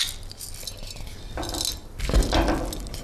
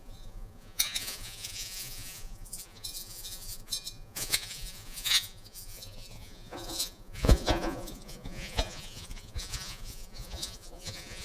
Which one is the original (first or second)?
first